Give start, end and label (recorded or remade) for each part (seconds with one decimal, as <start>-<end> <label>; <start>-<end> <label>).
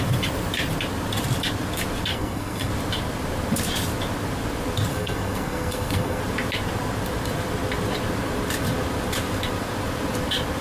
0.0-2.1 recorded; 2.1-2.7 remade; 2.7-4.9 recorded; 4.9-6.2 remade; 6.2-10.6 recorded